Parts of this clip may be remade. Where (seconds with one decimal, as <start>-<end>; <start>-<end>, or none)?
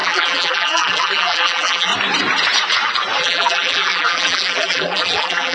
0.0-1.9; 3.2-5.5